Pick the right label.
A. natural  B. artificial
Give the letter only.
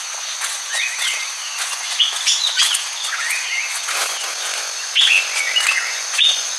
B